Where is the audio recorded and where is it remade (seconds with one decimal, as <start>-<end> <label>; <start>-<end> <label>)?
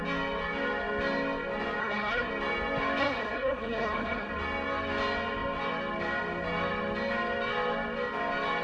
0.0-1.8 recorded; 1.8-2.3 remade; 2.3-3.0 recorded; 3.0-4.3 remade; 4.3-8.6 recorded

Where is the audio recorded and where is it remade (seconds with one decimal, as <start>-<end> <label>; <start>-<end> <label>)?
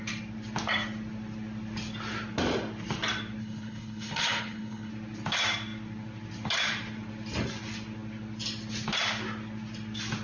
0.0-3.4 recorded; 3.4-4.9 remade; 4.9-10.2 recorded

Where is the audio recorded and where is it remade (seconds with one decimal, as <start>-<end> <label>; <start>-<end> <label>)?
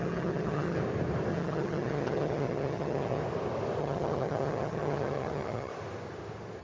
0.0-0.8 remade; 0.8-1.3 recorded; 1.3-3.2 remade; 3.2-3.8 recorded; 3.8-5.7 remade; 5.7-6.6 recorded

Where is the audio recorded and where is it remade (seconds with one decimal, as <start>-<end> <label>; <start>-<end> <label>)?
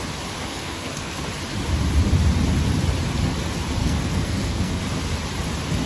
0.0-0.5 recorded; 0.5-1.2 remade; 1.2-3.8 recorded; 3.8-4.8 remade; 4.8-5.9 recorded